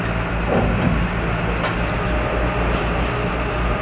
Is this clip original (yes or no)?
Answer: yes